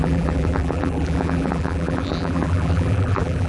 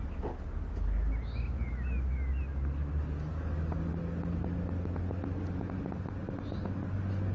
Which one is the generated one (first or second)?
first